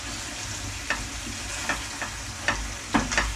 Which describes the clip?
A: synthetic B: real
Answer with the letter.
B